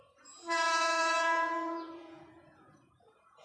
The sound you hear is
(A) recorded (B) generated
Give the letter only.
B